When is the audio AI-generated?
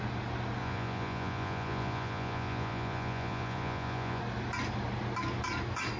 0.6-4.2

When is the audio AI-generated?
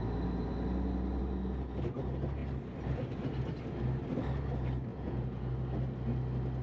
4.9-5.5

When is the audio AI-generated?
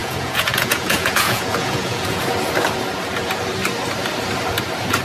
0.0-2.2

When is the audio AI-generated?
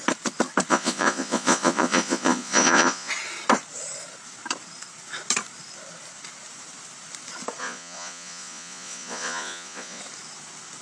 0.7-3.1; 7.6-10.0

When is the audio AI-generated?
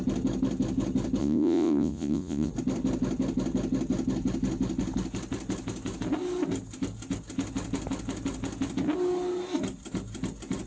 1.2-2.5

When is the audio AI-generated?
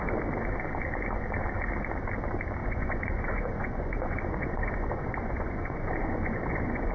2.6-6.9